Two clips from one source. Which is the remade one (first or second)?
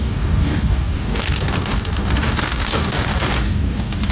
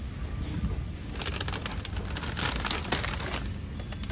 first